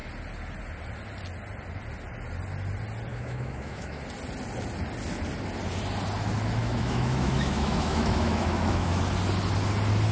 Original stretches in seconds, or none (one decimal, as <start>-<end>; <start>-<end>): 0.0-3.1; 4.0-6.6; 9.0-10.1